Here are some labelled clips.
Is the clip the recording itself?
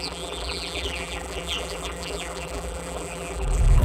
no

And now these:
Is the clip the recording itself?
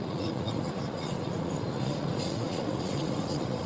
no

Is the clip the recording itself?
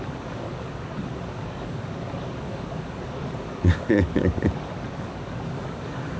no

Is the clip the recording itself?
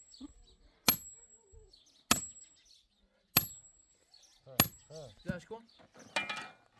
yes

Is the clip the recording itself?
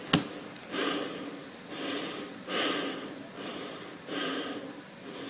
yes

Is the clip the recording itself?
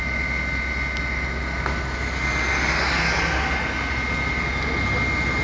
yes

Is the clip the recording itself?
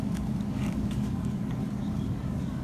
no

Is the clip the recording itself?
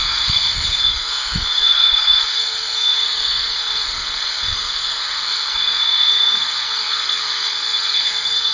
no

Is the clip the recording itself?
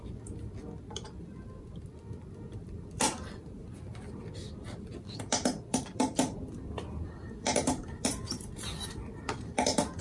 no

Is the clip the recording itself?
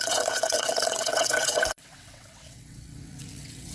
no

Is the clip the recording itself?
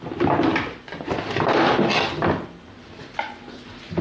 yes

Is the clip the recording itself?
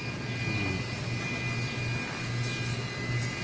yes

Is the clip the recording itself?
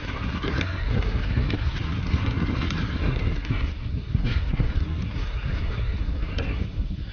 no